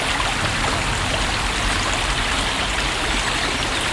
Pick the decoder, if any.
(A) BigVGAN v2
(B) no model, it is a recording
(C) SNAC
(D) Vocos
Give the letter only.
B